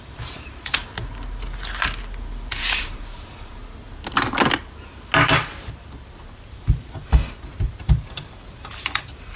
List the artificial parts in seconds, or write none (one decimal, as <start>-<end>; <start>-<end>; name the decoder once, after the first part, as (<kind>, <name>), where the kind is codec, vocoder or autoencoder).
0.0-0.8 (vocoder, BigVGAN v2); 2.5-3.6; 6.5-7.2; 7.8-9.4